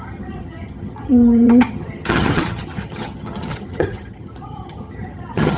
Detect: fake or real fake